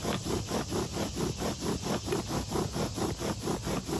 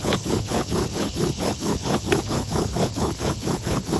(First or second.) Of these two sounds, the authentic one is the first